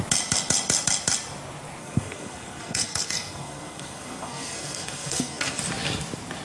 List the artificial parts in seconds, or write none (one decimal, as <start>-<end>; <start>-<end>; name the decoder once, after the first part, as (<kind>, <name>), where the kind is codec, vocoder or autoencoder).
1.8-5.6 (codec, SNAC)